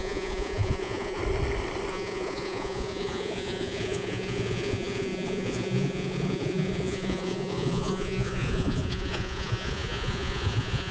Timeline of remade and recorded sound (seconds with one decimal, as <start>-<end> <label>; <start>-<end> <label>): 0.0-1.2 remade; 1.2-1.9 recorded; 1.9-10.9 remade